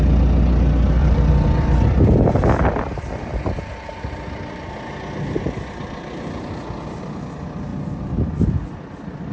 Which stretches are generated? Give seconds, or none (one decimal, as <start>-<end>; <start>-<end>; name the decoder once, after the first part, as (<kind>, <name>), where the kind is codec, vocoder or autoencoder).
1.0-2.2 (vocoder, BigVGAN v2)